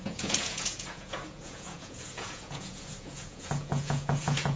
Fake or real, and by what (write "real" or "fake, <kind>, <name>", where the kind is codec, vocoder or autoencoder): fake, vocoder, Vocos